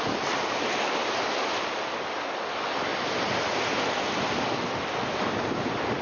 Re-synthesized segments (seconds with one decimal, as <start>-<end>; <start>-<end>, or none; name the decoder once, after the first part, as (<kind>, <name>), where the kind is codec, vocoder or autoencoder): none